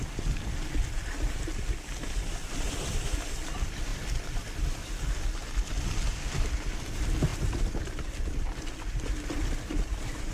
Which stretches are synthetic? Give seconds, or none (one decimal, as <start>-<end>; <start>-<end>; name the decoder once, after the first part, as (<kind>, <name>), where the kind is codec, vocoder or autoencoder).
0.0-5.4 (vocoder, BigVGAN v2); 6.5-10.3